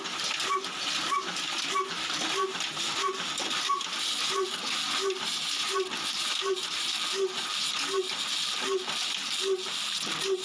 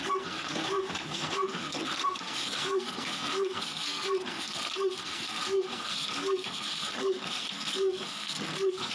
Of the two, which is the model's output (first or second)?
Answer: second